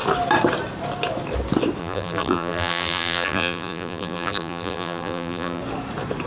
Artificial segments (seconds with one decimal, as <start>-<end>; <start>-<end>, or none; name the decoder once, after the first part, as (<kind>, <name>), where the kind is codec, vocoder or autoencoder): 1.8-5.6 (vocoder, BigVGAN v2)